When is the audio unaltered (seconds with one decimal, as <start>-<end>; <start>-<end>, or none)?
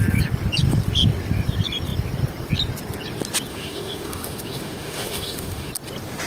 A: 0.0-3.5; 5.7-6.3